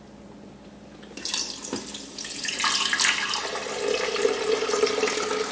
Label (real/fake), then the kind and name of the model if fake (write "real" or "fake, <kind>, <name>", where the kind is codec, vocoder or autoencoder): real